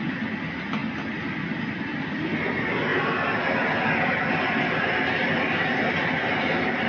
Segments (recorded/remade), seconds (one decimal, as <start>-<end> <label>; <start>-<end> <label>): 0.0-6.9 recorded